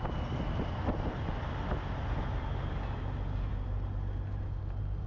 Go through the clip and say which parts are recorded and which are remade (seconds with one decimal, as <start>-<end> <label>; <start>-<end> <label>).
0.0-5.1 recorded